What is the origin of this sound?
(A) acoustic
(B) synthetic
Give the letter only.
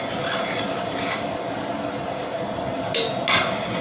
A